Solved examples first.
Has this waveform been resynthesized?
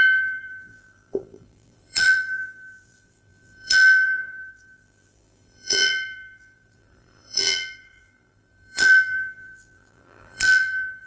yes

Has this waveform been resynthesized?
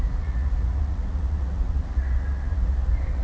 yes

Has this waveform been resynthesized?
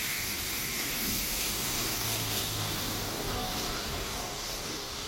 yes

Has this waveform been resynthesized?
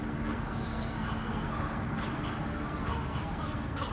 yes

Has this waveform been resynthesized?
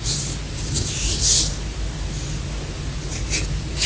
no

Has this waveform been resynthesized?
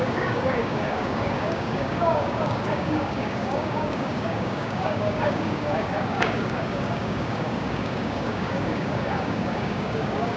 yes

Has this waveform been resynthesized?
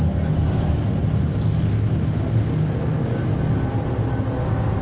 no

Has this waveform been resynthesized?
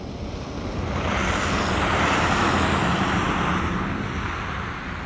no